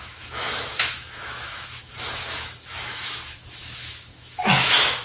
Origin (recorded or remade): remade